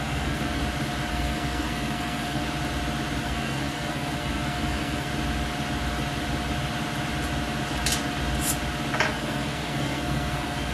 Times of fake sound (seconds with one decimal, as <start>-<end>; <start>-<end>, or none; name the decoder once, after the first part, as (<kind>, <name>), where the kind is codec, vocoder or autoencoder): 0.0-0.6 (codec, SNAC); 1.1-2.4; 3.2-5.1; 9.1-10.7